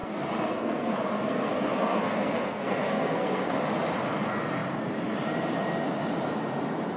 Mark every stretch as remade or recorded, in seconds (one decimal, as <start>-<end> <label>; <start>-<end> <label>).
0.0-3.6 remade; 3.6-7.0 recorded